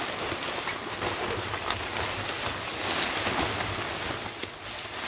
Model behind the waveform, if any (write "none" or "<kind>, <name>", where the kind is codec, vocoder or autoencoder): none